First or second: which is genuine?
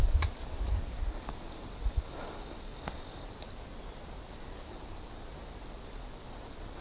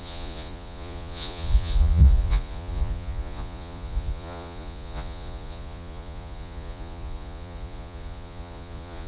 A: first